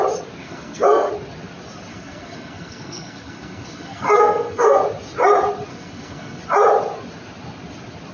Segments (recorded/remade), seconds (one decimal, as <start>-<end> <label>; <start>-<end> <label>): 0.0-0.4 recorded; 0.4-1.1 remade; 1.1-1.9 recorded; 1.9-4.8 remade; 4.8-5.7 recorded; 5.7-6.4 remade; 6.4-8.1 recorded